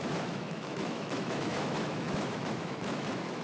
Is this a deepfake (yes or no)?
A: yes